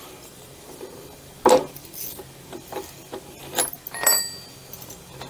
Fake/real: real